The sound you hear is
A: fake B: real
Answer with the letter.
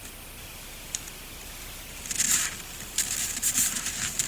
B